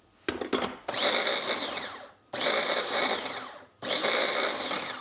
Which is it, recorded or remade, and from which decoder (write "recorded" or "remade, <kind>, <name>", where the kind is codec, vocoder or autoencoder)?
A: recorded